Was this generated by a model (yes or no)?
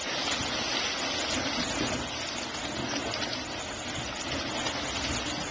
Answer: no